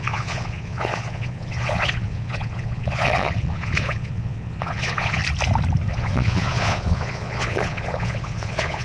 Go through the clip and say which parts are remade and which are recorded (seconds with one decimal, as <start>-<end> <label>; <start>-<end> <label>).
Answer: 0.0-5.2 remade; 5.2-5.9 recorded; 5.9-8.8 remade